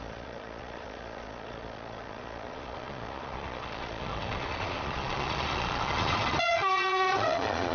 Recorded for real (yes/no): no